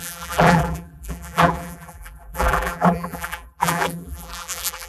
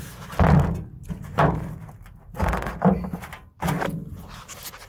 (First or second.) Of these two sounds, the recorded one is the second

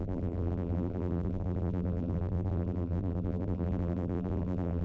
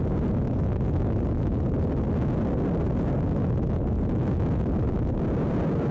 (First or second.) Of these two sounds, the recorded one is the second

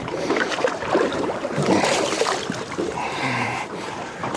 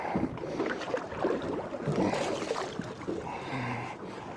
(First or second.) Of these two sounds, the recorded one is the second